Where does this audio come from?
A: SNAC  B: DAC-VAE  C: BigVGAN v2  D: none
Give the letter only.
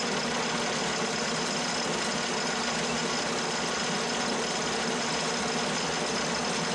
D